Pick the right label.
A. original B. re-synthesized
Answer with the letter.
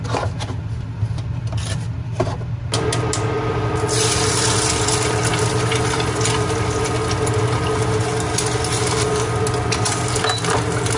A